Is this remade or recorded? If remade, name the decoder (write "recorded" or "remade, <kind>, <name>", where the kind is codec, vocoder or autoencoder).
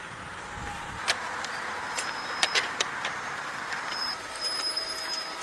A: remade, vocoder, BigVGAN v2